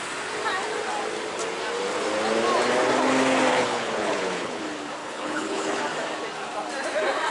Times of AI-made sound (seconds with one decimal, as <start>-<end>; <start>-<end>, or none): 3.5-4.6; 5.0-5.8